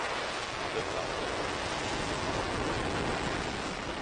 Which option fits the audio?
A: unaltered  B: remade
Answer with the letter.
A